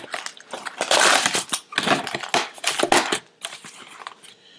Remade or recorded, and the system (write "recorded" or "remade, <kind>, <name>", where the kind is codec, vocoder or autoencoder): recorded